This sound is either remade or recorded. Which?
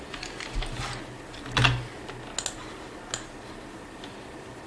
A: recorded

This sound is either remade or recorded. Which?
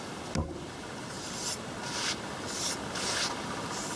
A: recorded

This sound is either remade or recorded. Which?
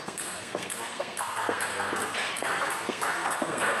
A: remade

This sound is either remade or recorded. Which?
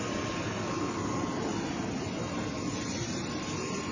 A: recorded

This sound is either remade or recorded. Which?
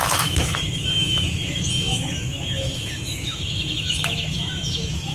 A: remade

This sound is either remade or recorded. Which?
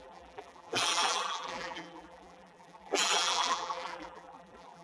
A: remade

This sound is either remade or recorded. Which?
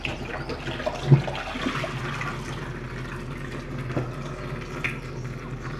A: recorded